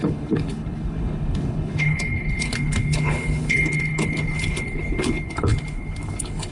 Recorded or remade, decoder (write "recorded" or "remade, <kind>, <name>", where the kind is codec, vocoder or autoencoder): remade, codec, HILCodec